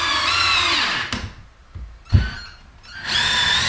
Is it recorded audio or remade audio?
recorded